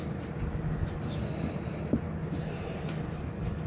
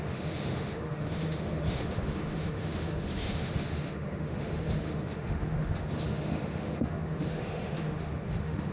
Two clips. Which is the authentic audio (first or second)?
first